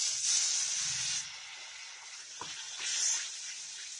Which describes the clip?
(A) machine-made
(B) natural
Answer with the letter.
B